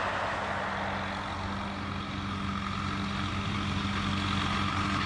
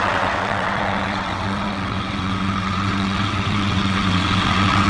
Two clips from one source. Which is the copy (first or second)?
second